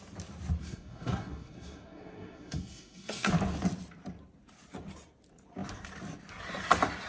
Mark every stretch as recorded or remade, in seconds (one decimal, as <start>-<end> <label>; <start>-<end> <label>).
0.0-0.6 recorded; 0.6-3.3 remade; 3.3-7.1 recorded